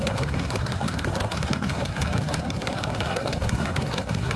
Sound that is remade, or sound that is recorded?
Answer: remade